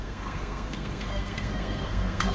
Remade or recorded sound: remade